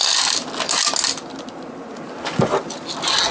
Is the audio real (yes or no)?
yes